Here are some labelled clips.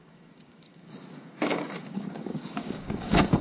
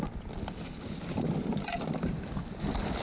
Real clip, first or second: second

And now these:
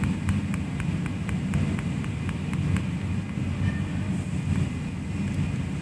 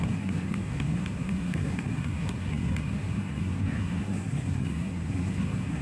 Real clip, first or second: first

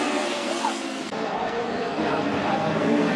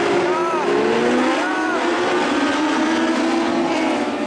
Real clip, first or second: second